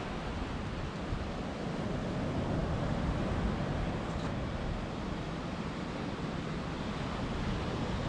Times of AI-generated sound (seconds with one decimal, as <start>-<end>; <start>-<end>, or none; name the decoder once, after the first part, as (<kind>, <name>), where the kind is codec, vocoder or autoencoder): none